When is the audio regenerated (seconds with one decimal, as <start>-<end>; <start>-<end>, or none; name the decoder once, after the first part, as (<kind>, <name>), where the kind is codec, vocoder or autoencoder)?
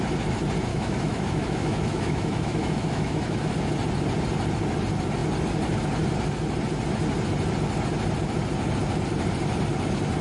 0.7-3.5 (autoencoder, DAC-VAE)